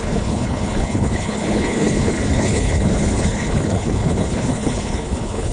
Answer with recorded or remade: remade